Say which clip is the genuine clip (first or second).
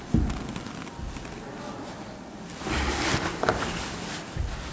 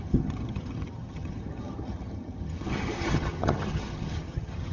first